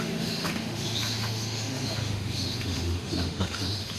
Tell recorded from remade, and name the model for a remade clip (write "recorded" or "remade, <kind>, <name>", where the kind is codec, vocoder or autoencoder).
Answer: remade, autoencoder, DAC-VAE